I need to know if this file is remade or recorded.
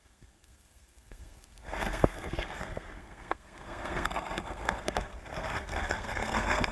remade